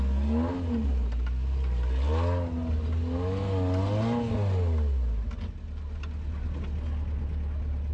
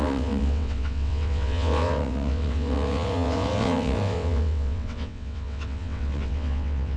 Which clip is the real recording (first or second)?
first